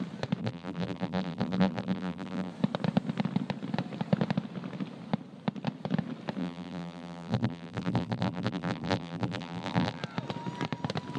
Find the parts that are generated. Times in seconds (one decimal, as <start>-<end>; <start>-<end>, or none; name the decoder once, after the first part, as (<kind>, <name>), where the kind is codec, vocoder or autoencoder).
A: 0.4-2.5 (vocoder, BigVGAN v2); 6.4-10.0